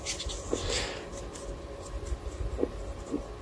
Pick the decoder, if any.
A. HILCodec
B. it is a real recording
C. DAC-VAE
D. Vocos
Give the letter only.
B